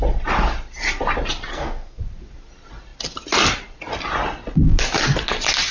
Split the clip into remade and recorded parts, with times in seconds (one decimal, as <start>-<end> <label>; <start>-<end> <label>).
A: 0.0-1.5 recorded; 1.5-2.0 remade; 2.0-5.7 recorded

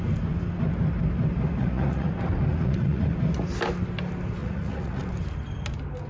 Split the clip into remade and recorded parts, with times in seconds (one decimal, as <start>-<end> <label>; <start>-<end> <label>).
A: 0.0-1.6 recorded; 1.6-2.1 remade; 2.1-2.5 recorded; 2.5-3.1 remade; 3.1-4.4 recorded; 4.4-5.0 remade; 5.0-6.1 recorded

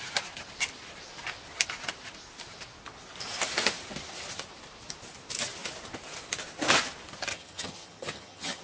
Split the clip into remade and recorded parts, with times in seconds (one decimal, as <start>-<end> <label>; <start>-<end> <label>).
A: 0.0-7.3 recorded; 7.3-8.6 remade

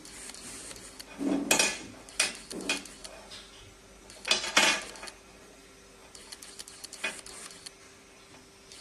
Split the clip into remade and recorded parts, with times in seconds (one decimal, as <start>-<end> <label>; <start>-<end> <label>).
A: 0.0-6.0 recorded; 6.0-7.1 remade; 7.1-8.8 recorded